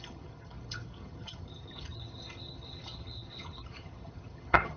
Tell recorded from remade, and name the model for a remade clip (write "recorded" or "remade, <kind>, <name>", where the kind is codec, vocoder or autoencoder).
remade, vocoder, HiFi-GAN